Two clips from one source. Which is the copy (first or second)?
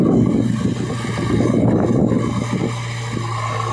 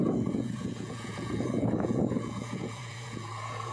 second